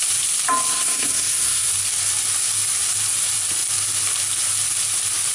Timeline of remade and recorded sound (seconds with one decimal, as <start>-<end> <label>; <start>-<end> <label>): 0.0-0.7 recorded; 0.7-1.7 remade; 1.7-5.3 recorded